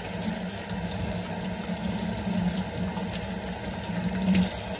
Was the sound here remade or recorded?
recorded